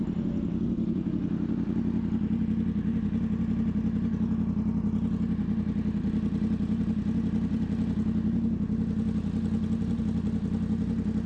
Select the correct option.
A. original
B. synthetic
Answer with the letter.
A